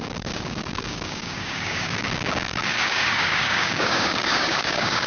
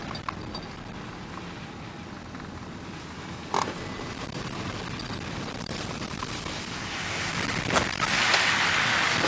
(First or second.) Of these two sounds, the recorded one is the second